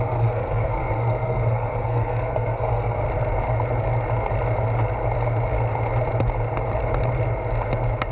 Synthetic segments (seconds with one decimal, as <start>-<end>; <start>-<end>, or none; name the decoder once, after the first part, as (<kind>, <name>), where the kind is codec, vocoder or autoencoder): 0.0-3.0 (codec, SNAC)